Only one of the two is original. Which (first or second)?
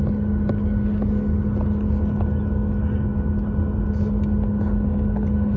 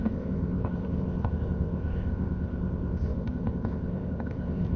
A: first